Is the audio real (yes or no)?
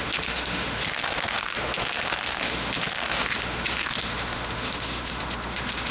no